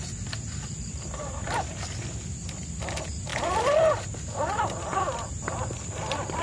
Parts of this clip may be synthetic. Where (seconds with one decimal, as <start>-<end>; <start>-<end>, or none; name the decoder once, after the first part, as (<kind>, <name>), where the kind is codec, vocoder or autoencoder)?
none